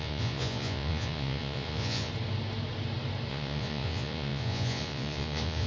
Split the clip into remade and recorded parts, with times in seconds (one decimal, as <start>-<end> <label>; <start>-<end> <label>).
0.0-2.1 remade; 2.1-3.3 recorded; 3.3-5.7 remade